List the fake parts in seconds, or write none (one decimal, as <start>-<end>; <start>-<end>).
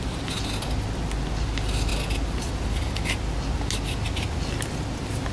none